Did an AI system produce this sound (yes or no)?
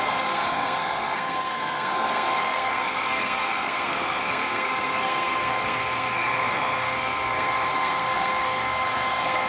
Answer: yes